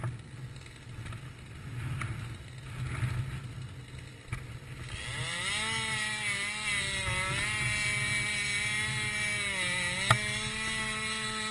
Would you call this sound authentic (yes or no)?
yes